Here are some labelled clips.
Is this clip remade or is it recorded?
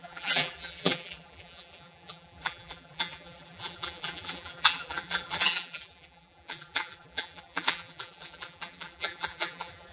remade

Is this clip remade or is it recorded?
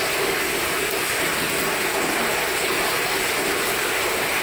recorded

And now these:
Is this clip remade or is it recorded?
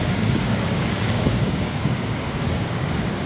remade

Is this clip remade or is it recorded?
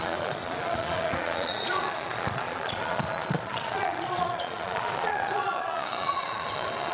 remade